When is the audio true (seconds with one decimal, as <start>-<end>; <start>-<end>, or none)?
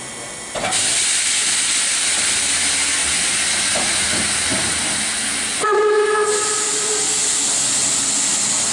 0.0-8.7